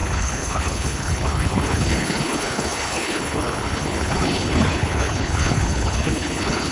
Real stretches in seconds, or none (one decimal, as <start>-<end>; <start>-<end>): none